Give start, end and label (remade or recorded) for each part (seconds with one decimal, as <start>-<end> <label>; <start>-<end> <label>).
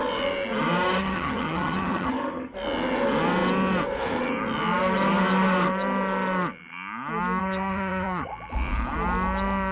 0.0-1.0 recorded; 1.0-2.1 remade; 2.1-7.4 recorded; 7.4-8.3 remade; 8.3-9.7 recorded